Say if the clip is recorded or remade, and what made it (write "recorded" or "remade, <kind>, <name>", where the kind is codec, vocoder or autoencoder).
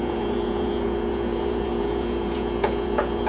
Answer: remade, vocoder, Vocos